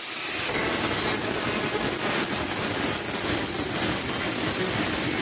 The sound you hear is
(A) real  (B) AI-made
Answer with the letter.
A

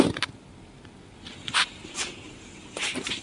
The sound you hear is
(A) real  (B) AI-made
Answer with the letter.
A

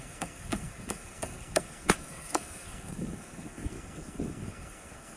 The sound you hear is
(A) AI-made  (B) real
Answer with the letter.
A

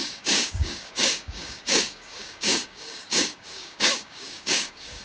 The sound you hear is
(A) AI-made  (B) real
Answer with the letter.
A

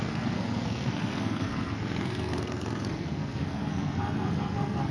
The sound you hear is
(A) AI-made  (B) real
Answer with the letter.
A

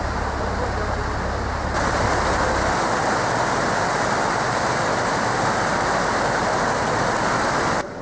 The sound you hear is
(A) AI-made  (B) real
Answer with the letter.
B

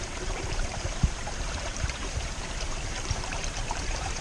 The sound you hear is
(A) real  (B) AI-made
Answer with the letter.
B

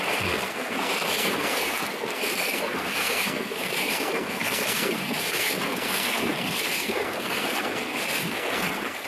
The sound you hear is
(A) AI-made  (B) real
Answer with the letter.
A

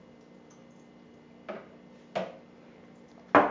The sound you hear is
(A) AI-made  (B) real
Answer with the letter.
B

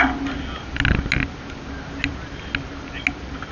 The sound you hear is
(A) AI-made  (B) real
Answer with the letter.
B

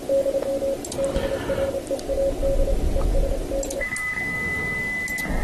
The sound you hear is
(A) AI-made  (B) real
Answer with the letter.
B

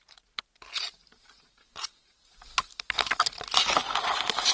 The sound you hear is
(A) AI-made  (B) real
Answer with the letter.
B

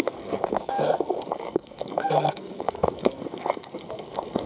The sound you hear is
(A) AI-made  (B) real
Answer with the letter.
A